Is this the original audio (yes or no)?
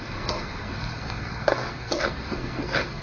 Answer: no